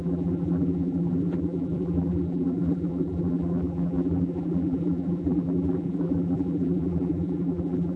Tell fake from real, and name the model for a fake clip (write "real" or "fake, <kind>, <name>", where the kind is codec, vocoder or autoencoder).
fake, vocoder, BigVGAN v2